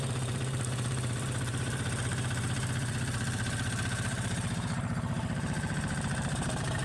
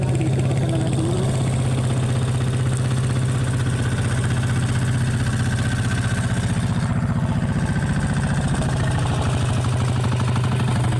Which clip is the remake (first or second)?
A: first